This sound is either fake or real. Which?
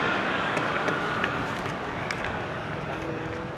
fake